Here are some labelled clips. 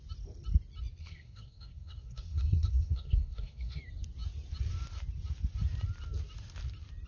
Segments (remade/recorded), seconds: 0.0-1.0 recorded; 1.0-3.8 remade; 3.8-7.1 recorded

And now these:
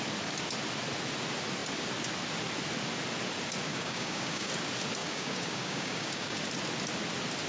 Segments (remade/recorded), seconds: 0.0-3.7 recorded; 3.7-4.5 remade; 4.5-5.0 recorded; 5.0-6.4 remade; 6.4-7.5 recorded

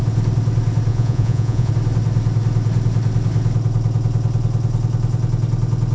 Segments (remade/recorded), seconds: 0.0-0.9 recorded; 0.9-1.7 remade; 1.7-5.9 recorded

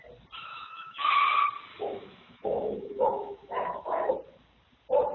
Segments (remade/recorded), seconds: 0.0-0.5 recorded; 0.5-1.2 remade; 1.2-1.7 recorded; 1.7-4.1 remade; 4.1-5.1 recorded

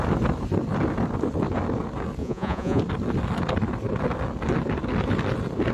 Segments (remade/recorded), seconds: 0.0-2.2 recorded; 2.2-2.8 remade; 2.8-5.7 recorded

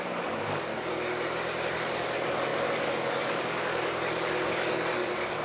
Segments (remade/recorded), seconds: 0.0-0.7 remade; 0.7-1.7 recorded; 1.7-5.4 remade

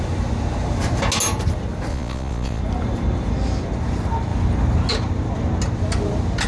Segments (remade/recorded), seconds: 0.0-1.9 recorded; 1.9-2.6 remade; 2.6-6.5 recorded

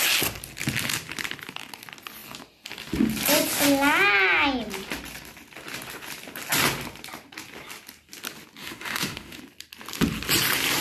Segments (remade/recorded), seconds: 0.0-8.6 recorded; 8.6-9.4 remade; 9.4-10.8 recorded